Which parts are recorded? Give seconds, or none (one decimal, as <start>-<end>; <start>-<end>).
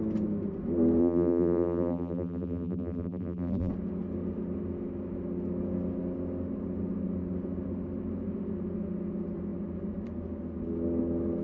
0.0-1.0; 3.7-11.4